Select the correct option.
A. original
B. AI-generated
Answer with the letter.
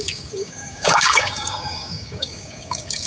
B